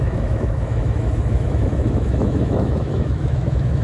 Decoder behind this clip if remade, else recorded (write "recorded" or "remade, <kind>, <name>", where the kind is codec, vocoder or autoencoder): remade, autoencoder, DAC-VAE